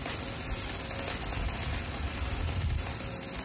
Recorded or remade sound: recorded